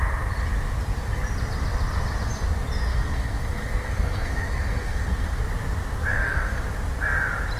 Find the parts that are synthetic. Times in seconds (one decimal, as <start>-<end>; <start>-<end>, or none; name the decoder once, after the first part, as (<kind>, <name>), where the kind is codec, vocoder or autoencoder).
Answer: 2.9-5.4 (codec, SNAC); 6.1-6.6